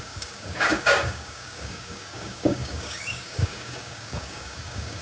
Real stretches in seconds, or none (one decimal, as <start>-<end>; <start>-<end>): none